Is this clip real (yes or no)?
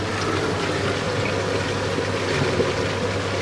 yes